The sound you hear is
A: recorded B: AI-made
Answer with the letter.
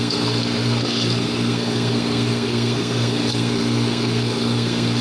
B